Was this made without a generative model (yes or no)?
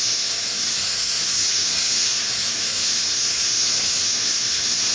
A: no